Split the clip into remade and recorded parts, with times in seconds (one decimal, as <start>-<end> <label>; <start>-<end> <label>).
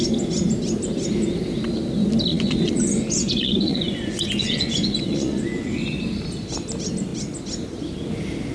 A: 0.0-2.3 recorded; 2.3-5.8 remade; 5.8-8.5 recorded